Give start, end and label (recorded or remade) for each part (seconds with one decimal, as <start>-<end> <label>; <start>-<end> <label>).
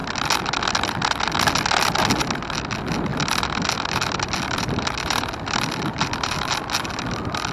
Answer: 0.0-3.1 recorded; 3.1-6.5 remade; 6.5-7.5 recorded